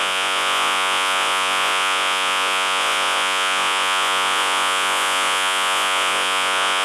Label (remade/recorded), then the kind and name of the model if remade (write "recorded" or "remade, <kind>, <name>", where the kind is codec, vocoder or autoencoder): remade, vocoder, Vocos